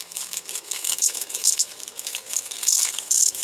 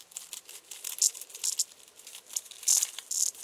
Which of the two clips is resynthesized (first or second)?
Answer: first